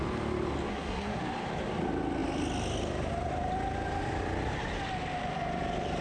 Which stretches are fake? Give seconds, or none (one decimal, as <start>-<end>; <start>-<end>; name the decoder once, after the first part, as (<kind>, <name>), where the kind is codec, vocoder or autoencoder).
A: 0.7-1.2 (codec, SNAC)